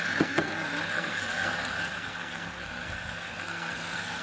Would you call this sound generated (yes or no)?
yes